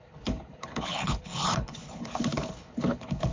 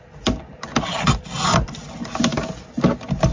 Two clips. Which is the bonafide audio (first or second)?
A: second